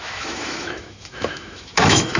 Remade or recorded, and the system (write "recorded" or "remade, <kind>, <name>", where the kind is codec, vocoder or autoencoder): remade, autoencoder, DAC-VAE